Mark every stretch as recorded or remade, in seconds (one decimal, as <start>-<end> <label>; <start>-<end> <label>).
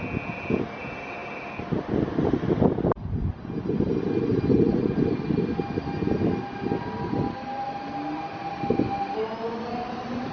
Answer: 0.0-10.3 recorded